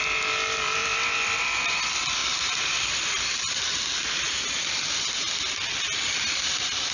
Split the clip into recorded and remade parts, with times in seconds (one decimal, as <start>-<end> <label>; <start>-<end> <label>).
0.0-0.8 recorded; 0.8-1.6 remade; 1.6-2.2 recorded; 2.2-4.4 remade; 4.4-6.9 recorded